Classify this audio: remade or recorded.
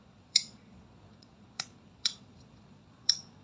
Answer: remade